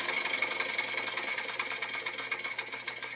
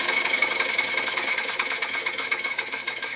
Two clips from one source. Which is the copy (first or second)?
second